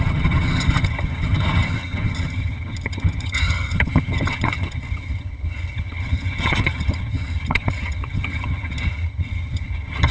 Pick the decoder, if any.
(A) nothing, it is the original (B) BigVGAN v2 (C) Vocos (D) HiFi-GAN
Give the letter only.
D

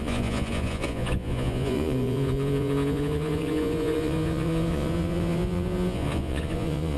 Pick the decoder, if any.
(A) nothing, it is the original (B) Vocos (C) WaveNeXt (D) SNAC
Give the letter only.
B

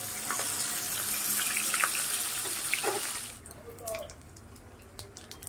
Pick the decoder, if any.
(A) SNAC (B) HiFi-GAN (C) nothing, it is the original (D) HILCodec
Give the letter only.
C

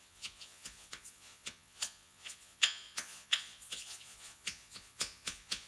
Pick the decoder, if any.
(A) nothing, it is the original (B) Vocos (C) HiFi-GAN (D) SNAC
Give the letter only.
B